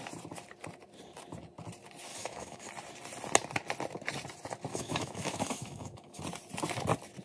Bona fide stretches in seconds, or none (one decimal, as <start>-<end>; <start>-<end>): 0.0-2.1; 2.7-4.7; 6.2-7.2